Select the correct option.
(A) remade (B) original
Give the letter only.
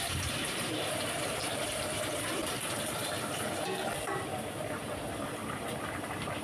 A